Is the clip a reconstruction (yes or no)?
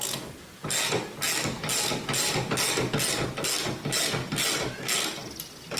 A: no